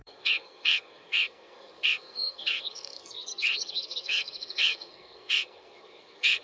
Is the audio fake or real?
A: fake